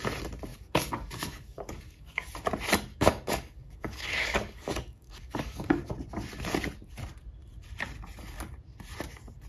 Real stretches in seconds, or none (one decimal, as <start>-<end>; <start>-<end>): 0.0-0.5; 2.3-2.9; 5.9-9.5